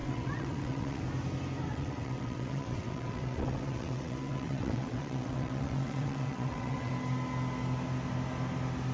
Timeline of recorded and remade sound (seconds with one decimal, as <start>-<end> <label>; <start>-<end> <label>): 0.0-1.0 remade; 1.0-1.7 recorded; 1.7-6.9 remade; 6.9-8.9 recorded